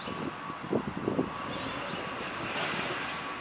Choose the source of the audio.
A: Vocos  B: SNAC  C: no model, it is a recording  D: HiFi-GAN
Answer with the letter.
C